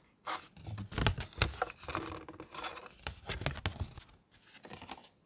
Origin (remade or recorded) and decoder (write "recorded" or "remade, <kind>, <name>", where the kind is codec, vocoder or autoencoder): recorded